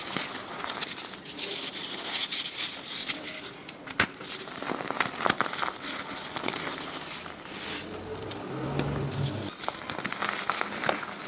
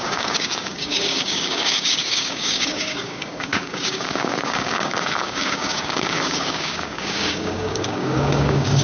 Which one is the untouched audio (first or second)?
first